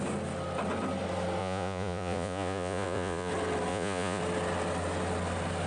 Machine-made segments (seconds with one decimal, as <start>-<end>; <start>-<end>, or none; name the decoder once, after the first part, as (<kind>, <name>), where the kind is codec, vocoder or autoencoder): 1.4-3.3 (vocoder, Vocos); 3.7-4.2